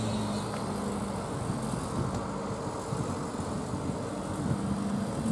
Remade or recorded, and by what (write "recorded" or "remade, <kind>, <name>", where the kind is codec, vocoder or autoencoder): recorded